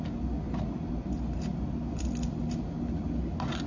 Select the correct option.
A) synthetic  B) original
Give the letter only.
B